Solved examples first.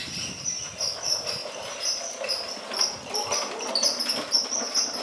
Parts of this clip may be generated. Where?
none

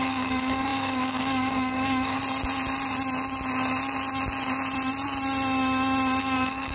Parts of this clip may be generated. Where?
0.0-2.2 (codec, DAC); 6.2-6.7

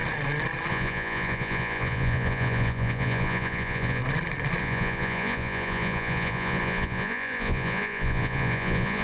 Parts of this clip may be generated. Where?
0.7-4.0 (vocoder, Vocos); 4.6-9.0

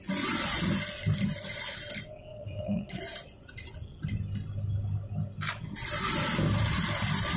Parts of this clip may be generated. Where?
2.3-3.0 (vocoder, WaveNeXt)

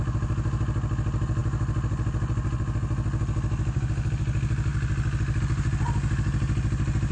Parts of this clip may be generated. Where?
none

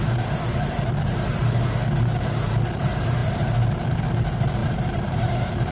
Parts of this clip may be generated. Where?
0.0-1.4 (vocoder, BigVGAN v2); 2.7-5.7